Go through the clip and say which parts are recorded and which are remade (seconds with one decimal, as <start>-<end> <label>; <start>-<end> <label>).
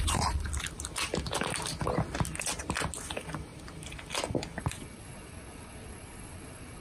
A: 0.0-0.5 remade; 0.5-4.6 recorded; 4.6-6.8 remade